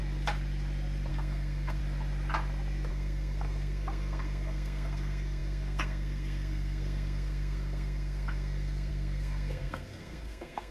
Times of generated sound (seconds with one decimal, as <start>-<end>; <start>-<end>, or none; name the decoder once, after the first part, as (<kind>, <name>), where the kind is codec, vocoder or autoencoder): 1.1-1.8 (codec, SNAC); 2.9-10.7